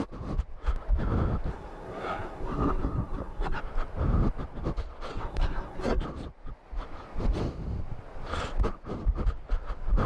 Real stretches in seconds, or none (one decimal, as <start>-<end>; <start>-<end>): 0.0-1.5; 3.6-5.1; 6.0-10.1